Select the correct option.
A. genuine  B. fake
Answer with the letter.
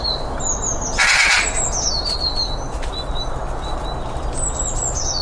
A